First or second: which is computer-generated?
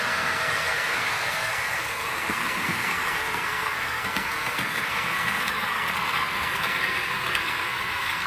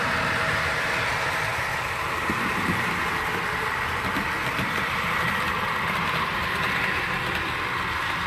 first